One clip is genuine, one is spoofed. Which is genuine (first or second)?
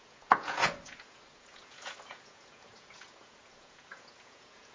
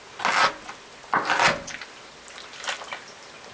second